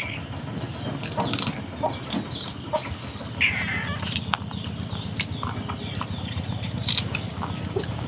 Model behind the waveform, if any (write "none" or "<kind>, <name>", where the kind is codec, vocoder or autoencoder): none